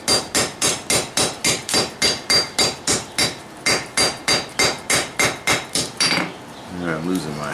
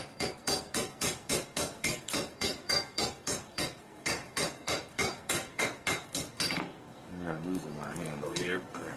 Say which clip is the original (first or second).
first